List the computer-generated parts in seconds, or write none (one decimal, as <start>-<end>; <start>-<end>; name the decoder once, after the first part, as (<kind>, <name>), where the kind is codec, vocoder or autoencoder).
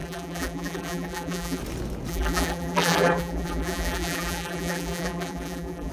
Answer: 0.0-1.6 (vocoder, BigVGAN v2); 2.1-5.9